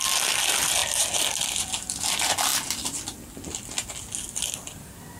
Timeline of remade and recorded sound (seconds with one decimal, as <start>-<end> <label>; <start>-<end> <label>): 0.0-5.2 recorded